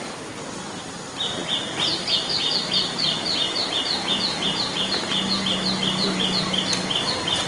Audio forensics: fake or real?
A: real